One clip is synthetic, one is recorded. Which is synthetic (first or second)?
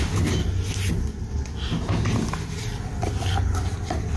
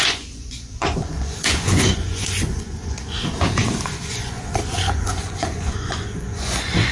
second